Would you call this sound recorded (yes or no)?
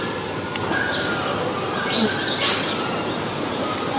yes